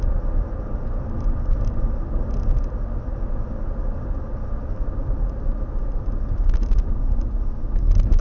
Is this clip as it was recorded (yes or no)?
yes